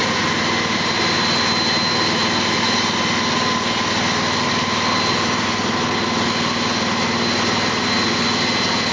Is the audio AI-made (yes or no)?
no